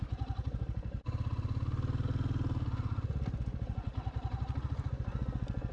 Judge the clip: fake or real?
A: real